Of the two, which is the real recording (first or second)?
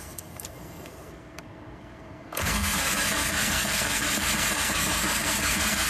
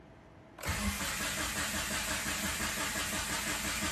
second